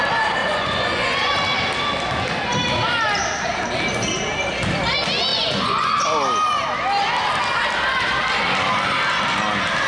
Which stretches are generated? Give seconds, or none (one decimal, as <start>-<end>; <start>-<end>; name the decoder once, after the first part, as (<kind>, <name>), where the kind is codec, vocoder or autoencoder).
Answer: 0.4-1.3 (vocoder, Vocos); 5.3-6.0